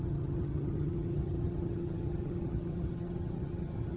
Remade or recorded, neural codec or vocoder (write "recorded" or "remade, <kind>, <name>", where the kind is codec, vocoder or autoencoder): remade, vocoder, HiFi-GAN